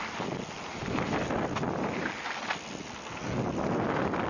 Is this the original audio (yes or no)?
yes